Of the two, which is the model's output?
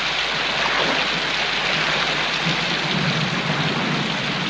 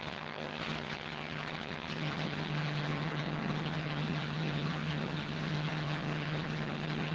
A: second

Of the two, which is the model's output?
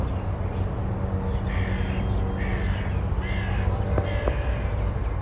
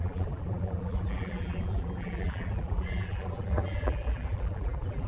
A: second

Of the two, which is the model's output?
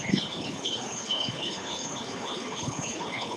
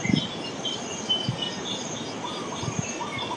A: first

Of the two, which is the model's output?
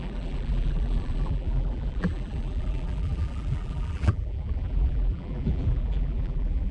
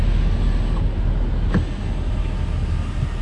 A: first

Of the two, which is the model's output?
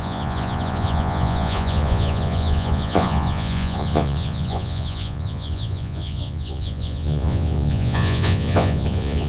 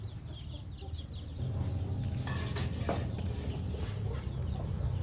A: first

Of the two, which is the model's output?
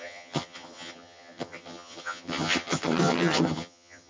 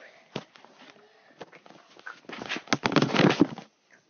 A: first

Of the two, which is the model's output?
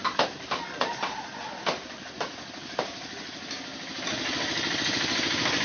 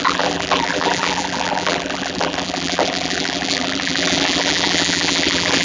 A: second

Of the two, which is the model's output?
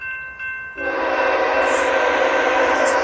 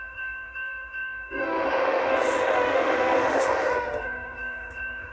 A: second